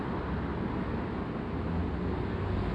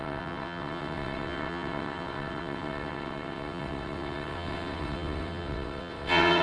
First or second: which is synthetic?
second